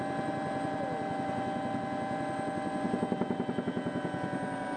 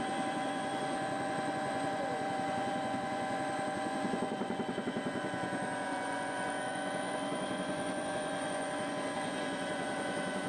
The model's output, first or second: second